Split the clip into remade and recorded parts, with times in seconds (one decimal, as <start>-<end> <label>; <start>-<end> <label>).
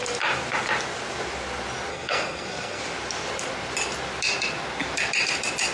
0.0-1.9 recorded; 1.9-2.8 remade; 2.8-5.7 recorded